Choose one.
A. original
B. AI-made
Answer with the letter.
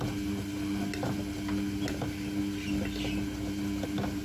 A